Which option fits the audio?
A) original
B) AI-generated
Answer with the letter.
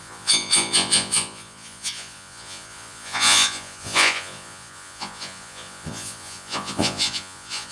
B